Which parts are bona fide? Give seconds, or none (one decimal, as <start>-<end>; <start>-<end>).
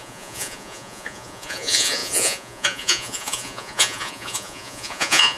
none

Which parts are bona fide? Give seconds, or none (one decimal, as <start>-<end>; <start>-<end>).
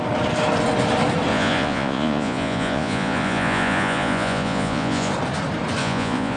0.0-1.3; 5.1-5.8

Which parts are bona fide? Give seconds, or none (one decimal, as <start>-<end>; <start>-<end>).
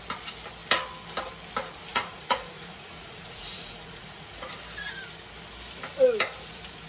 0.0-1.9; 4.5-6.9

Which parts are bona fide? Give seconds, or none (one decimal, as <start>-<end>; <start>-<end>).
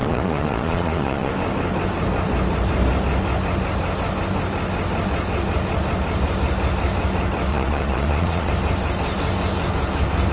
1.3-7.5; 8.5-10.3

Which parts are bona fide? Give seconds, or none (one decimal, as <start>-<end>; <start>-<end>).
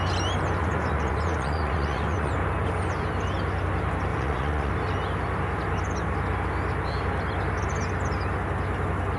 0.0-0.6; 2.3-4.1; 4.7-9.2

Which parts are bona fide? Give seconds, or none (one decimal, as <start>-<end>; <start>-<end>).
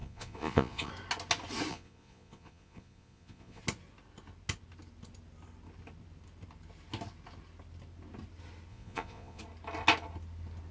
0.9-1.7; 3.6-8.7; 9.4-10.7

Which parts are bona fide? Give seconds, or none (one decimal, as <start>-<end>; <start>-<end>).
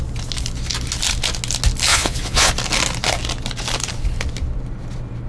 0.0-1.9; 2.5-5.3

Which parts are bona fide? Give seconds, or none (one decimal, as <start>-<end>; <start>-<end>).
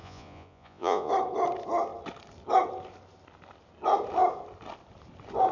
1.1-5.5